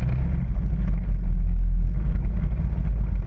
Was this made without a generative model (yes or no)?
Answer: yes